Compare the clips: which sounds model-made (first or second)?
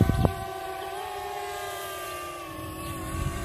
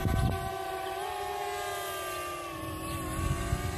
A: first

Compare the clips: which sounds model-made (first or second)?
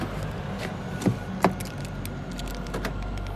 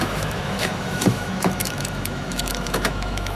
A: second